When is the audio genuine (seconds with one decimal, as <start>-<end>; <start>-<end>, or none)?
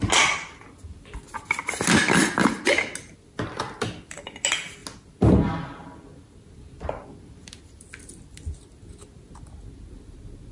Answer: 0.0-10.5